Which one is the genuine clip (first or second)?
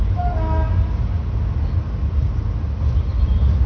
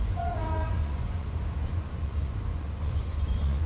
first